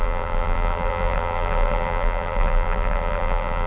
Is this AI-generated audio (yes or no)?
yes